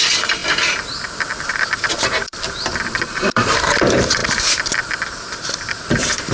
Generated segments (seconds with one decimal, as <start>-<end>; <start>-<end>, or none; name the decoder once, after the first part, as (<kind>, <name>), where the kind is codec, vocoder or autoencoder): 0.0-4.2 (vocoder, BigVGAN v2); 4.8-6.3